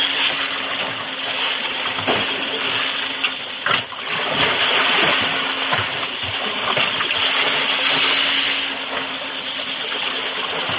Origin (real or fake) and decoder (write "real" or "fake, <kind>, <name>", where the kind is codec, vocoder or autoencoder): real